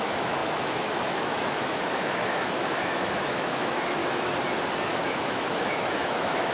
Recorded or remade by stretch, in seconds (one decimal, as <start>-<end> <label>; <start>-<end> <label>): 0.0-4.0 remade; 4.0-4.8 recorded; 4.8-6.5 remade